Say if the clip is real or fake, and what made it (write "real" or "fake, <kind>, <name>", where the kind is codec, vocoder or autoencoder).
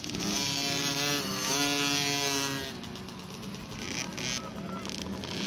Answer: real